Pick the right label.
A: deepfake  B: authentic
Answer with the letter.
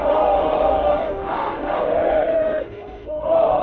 A